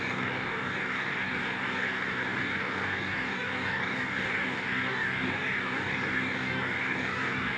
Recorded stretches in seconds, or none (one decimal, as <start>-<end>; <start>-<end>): none